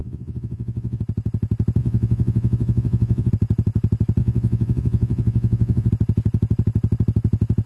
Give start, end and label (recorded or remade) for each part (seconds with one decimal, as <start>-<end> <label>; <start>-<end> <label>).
0.0-1.0 remade; 1.0-1.8 recorded; 1.8-3.3 remade; 3.3-4.2 recorded; 4.2-5.9 remade; 5.9-7.7 recorded